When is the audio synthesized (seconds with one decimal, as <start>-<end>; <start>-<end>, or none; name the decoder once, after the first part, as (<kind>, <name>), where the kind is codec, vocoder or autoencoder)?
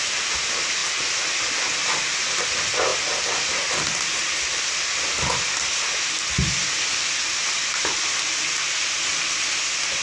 none